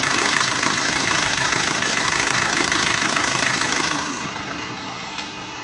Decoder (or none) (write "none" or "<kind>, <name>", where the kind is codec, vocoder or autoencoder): codec, SNAC